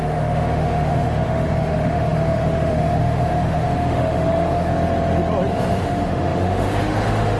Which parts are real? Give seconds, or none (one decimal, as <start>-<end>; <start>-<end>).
4.7-5.5